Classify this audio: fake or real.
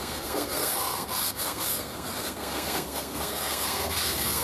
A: fake